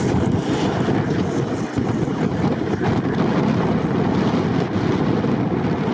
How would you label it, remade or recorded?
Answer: recorded